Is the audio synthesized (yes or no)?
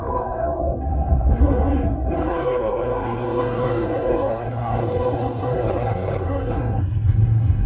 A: yes